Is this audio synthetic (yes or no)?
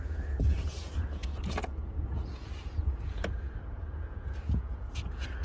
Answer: yes